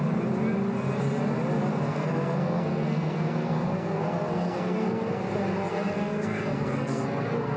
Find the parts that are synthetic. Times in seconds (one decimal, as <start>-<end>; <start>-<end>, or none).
1.7-5.2; 5.7-7.6